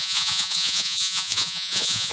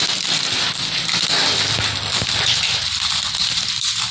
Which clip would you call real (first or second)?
second